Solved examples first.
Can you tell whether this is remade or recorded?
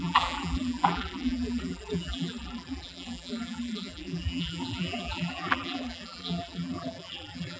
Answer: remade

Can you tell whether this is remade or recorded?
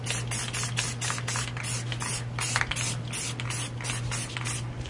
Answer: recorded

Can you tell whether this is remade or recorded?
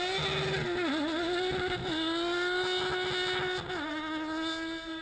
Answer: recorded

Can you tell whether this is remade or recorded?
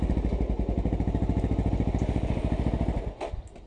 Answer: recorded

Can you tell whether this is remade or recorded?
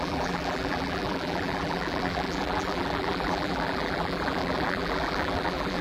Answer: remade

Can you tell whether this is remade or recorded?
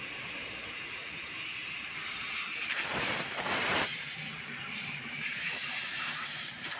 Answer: remade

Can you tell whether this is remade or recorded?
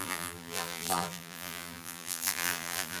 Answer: remade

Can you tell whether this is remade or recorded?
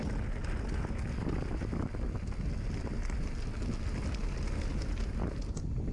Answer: recorded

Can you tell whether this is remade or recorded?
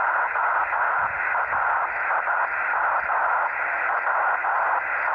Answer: recorded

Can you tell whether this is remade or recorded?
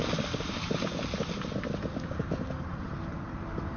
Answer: recorded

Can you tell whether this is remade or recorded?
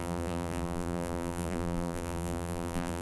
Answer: remade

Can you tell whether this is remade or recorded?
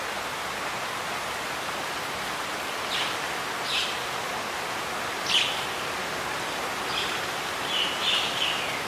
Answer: recorded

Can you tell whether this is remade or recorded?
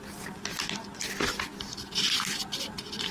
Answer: recorded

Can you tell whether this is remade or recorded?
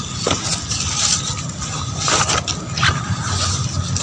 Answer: recorded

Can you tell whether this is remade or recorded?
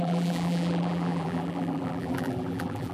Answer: remade